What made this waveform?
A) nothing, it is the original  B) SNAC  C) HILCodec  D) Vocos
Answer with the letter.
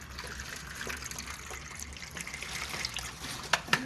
A